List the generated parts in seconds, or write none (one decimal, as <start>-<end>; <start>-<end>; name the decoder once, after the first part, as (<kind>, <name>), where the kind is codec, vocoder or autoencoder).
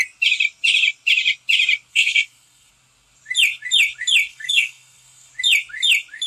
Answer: 1.9-2.7 (codec, SNAC); 4.3-5.3